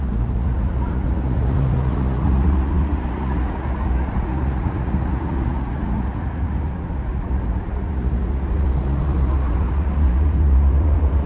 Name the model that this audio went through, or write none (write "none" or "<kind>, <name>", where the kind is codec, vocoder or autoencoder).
vocoder, Vocos